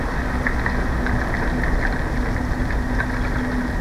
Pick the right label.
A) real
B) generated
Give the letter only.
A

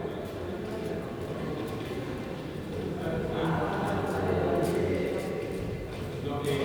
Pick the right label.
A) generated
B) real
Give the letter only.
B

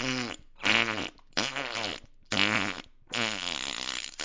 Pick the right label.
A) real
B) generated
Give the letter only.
A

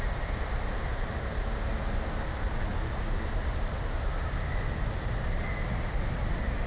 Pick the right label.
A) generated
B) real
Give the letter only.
B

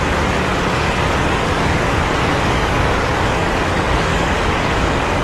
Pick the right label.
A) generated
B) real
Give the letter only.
A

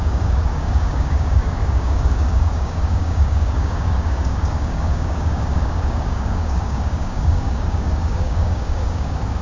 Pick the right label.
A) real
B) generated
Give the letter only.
B